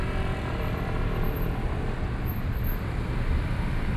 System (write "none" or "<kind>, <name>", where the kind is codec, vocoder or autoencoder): vocoder, BigVGAN v2